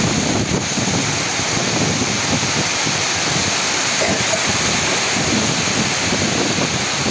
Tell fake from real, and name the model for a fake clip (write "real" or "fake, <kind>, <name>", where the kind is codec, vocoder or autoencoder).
real